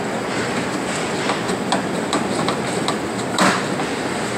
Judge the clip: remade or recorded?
recorded